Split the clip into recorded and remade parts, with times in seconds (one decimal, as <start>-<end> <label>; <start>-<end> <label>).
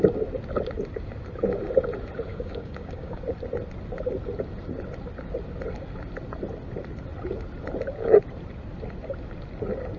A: 0.0-2.3 recorded; 2.3-3.2 remade; 3.2-10.0 recorded